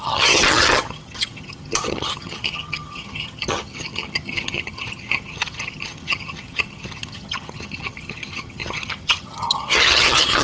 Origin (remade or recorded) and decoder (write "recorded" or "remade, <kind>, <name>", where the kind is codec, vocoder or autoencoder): remade, vocoder, HiFi-GAN